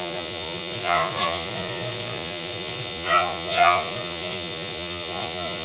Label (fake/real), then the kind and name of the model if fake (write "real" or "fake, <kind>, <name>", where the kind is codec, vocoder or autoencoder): fake, vocoder, Vocos